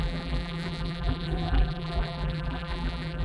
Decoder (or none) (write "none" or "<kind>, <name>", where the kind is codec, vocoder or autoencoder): vocoder, BigVGAN v2